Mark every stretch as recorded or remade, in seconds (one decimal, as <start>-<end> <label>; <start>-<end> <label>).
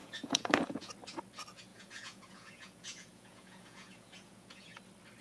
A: 0.0-0.9 remade; 0.9-1.7 recorded; 1.7-4.8 remade; 4.8-5.2 recorded